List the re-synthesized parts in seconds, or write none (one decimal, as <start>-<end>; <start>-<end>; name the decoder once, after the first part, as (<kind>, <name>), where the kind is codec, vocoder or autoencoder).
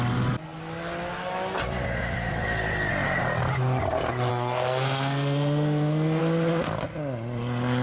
4.3-6.2 (codec, SNAC)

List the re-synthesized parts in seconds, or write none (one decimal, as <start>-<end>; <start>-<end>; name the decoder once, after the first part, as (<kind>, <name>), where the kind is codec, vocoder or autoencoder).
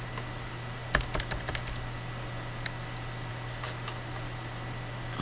none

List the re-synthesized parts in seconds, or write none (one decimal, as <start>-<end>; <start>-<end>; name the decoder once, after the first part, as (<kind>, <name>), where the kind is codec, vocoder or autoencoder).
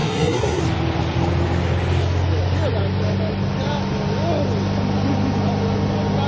0.0-0.6 (codec, SNAC)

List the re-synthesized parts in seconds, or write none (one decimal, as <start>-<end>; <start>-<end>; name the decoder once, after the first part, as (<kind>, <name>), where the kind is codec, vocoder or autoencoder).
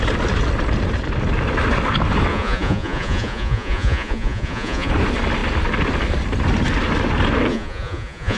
2.3-4.9 (vocoder, Vocos); 7.5-8.4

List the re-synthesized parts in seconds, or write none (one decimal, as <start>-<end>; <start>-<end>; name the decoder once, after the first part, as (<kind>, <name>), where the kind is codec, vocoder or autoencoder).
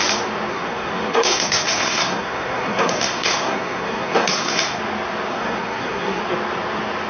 0.5-4.8 (codec, SNAC); 5.3-6.2